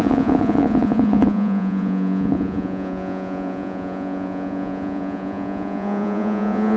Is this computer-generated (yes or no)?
yes